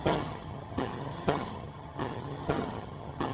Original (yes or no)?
no